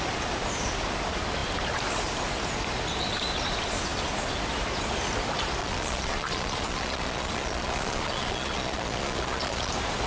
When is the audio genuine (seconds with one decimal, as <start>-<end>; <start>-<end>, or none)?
0.0-5.6; 9.7-10.1